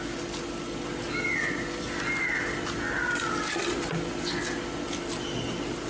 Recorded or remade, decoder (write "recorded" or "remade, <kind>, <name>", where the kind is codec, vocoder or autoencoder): recorded